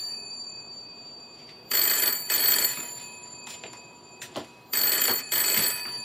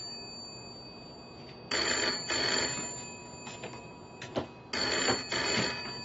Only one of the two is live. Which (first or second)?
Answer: second